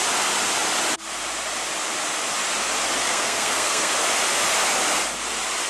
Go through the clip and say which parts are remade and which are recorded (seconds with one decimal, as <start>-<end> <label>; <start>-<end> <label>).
0.0-3.0 recorded; 3.0-3.9 remade; 3.9-5.7 recorded